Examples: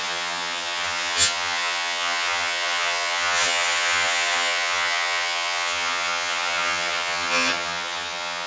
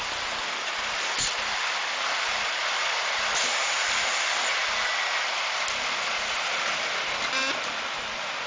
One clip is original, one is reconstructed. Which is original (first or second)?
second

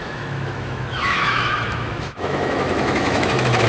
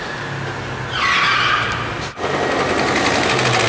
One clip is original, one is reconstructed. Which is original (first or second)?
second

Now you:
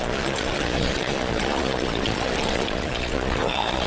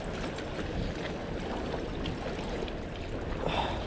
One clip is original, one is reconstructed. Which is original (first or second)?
second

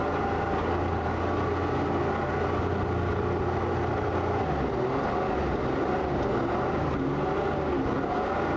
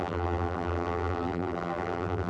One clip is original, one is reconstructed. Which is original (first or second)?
first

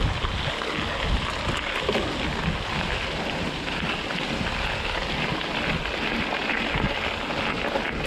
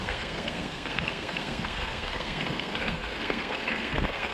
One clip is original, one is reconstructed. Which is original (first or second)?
first